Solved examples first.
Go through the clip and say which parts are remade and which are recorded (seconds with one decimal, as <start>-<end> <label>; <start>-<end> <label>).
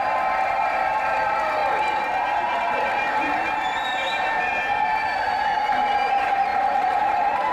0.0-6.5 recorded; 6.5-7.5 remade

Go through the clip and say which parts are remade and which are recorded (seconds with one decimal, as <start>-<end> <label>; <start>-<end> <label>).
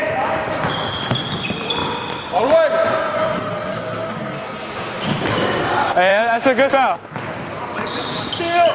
0.0-3.7 recorded; 3.7-4.2 remade; 4.2-8.7 recorded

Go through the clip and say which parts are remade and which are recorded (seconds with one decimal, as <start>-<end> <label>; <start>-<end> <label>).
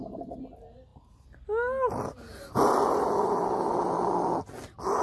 0.0-5.0 recorded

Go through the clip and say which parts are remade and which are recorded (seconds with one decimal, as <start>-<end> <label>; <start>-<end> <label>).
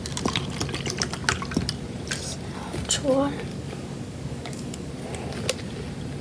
0.0-3.5 recorded; 3.5-4.9 remade; 4.9-6.2 recorded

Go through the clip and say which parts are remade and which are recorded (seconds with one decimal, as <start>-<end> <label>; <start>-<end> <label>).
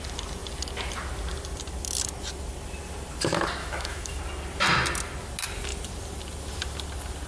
0.0-3.6 recorded; 3.6-4.2 remade; 4.2-7.3 recorded